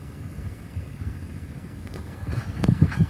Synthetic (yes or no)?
yes